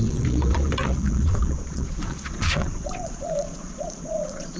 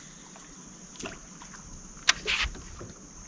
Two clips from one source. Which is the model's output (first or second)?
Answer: first